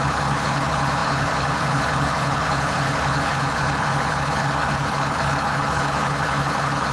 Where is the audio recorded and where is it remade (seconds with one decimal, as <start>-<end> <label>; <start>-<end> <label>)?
0.0-6.9 remade